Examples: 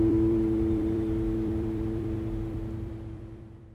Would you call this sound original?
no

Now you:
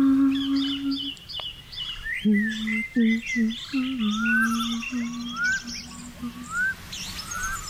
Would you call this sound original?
yes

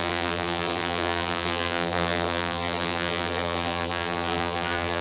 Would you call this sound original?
no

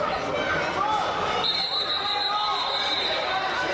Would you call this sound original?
yes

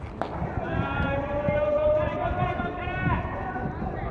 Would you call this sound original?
no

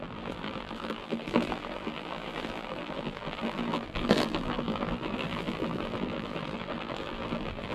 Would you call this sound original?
no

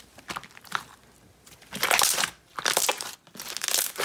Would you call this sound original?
yes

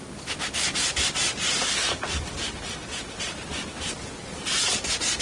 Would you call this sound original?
yes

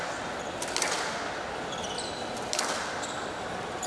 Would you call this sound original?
yes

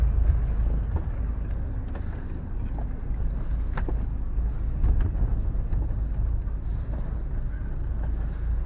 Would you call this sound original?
yes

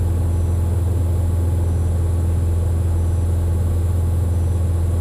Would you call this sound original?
yes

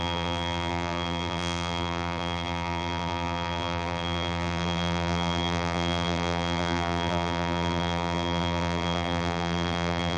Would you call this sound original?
no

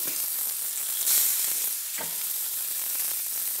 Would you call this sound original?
no